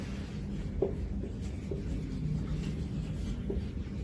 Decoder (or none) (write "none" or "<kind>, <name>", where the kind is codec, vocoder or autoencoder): none